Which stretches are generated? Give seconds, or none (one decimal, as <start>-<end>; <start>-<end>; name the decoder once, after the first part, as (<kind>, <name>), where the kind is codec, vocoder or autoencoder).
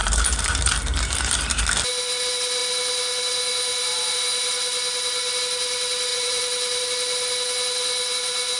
0.0-1.6 (vocoder, BigVGAN v2); 6.1-6.8